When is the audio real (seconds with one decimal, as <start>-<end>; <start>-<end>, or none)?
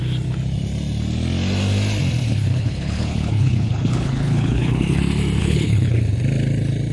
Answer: 0.0-2.2; 5.0-5.4; 6.0-6.9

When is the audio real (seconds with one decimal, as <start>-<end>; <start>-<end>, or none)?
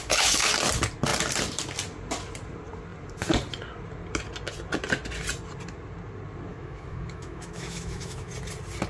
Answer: 0.5-6.5; 8.3-8.9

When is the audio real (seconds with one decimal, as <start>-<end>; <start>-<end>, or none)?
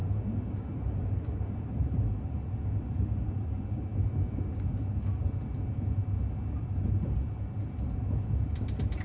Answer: 0.0-9.0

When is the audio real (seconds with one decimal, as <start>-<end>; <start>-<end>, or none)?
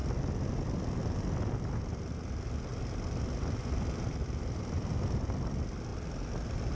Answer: 0.0-6.7